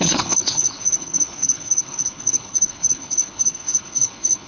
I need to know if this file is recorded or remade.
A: remade